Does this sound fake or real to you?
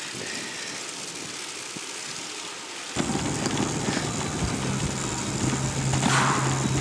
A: real